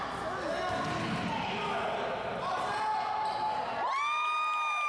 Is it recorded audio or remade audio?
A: recorded